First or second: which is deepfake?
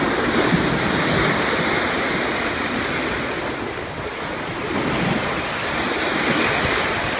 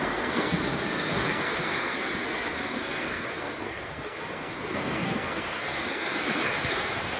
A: second